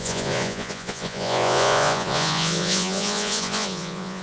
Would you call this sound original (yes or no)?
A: no